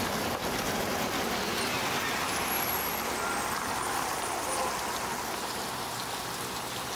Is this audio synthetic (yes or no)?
no